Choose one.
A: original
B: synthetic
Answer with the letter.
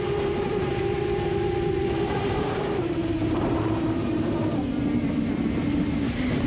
B